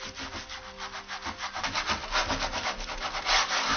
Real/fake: real